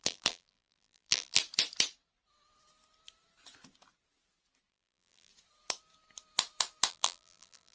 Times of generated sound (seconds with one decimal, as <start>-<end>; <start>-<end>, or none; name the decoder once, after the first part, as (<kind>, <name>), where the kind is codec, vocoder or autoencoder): 0.0-1.4 (vocoder, BigVGAN v2); 4.7-5.3; 6.9-7.7